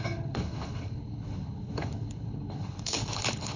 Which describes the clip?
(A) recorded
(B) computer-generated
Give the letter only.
B